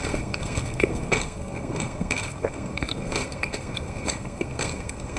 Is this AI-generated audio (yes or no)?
yes